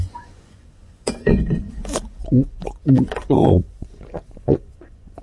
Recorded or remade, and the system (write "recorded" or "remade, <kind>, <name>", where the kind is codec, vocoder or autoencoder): remade, vocoder, Vocos